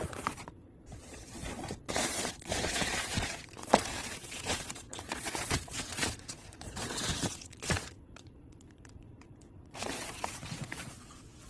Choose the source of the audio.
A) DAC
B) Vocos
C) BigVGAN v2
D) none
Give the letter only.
B